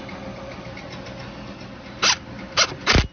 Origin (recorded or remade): recorded